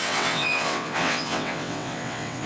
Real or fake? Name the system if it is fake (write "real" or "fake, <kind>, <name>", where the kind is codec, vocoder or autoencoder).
fake, vocoder, WaveNeXt